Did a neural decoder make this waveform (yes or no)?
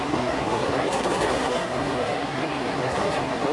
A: yes